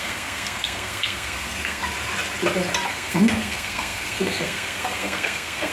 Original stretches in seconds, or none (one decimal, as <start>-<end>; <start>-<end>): 1.8-2.9